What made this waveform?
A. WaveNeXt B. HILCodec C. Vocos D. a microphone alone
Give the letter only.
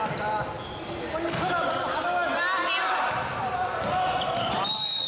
D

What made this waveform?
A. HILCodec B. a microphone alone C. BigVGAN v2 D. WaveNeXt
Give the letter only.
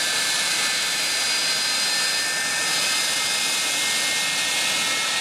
B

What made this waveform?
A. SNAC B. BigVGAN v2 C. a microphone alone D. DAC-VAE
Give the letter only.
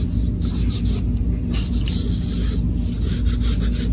C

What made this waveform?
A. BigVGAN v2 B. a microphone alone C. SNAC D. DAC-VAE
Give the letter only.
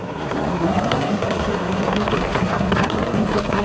C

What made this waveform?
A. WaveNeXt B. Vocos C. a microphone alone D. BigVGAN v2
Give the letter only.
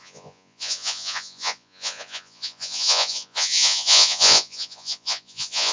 B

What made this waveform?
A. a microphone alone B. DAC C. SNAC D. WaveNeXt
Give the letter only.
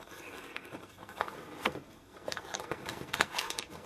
C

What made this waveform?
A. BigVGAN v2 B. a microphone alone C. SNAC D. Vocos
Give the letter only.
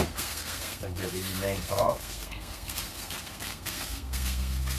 C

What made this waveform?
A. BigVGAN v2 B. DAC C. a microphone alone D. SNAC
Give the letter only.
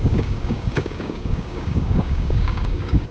B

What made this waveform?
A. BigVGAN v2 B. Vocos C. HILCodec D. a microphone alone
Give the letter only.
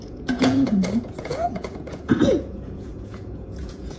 B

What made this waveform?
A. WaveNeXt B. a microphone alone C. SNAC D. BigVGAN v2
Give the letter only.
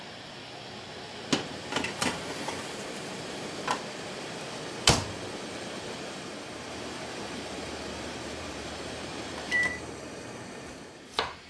D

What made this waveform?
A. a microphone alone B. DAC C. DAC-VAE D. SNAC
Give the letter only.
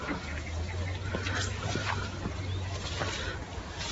A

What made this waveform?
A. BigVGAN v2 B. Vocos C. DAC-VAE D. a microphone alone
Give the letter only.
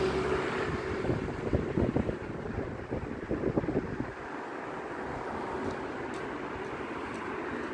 D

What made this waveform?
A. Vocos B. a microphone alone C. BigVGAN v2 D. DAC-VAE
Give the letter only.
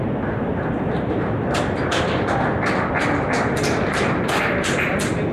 B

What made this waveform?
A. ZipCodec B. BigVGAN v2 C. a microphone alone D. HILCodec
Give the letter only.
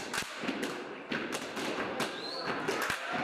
C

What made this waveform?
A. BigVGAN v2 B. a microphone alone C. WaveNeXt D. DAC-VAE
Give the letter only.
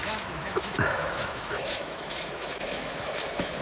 D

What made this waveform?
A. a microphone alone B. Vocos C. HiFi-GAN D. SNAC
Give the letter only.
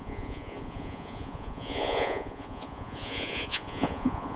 B